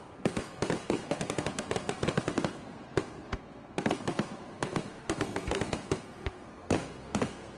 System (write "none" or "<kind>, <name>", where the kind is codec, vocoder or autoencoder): codec, SNAC